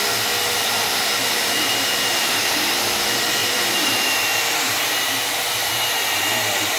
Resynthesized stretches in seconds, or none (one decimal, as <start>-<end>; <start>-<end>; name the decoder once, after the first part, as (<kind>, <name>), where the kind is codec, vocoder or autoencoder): 1.2-3.0 (vocoder, BigVGAN v2); 3.4-5.1; 5.6-6.8